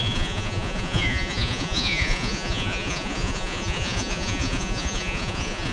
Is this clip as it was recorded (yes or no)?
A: no